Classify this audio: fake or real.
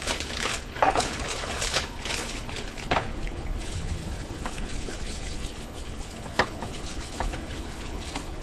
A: fake